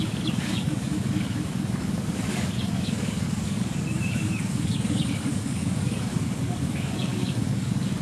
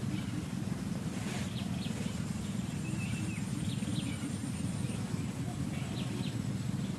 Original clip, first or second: second